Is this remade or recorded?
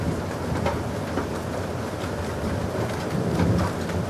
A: recorded